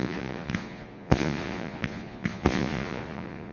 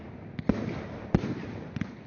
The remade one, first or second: first